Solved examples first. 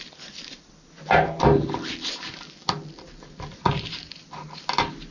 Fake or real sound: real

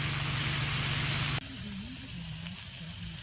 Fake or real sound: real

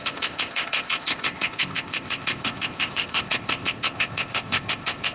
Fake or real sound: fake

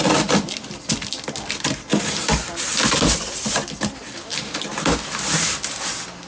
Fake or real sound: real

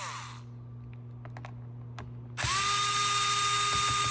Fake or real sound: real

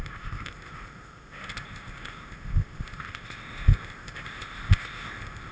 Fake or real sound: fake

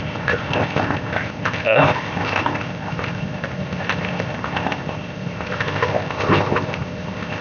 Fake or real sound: fake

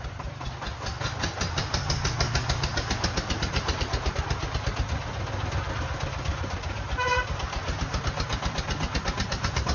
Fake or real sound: real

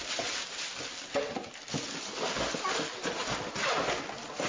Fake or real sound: real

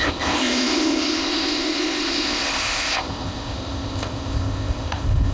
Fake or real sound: fake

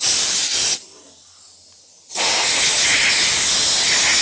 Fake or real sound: real